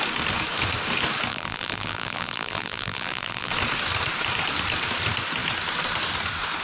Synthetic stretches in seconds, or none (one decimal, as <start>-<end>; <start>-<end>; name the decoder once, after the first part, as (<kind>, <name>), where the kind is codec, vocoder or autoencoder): 1.3-3.5 (vocoder, BigVGAN v2)